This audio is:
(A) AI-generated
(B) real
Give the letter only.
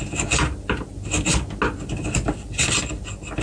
B